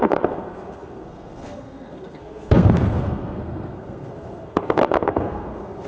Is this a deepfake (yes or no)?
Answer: yes